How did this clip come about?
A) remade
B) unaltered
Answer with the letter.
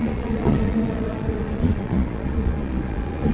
A